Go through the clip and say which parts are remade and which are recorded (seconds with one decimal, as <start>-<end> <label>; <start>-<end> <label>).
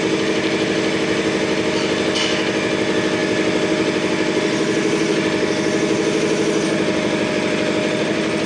0.0-8.5 recorded